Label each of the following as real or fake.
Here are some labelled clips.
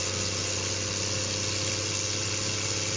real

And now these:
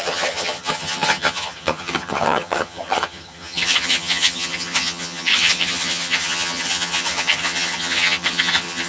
fake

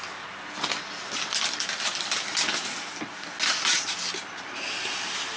real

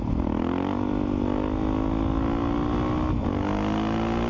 real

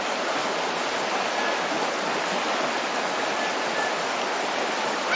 real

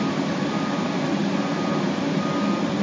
real